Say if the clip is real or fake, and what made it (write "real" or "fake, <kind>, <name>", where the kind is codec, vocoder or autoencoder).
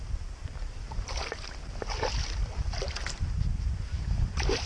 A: fake, vocoder, BigVGAN v2